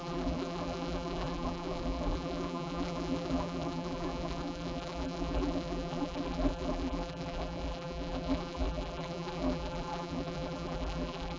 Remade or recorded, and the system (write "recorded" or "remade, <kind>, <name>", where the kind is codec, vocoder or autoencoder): remade, vocoder, BigVGAN v2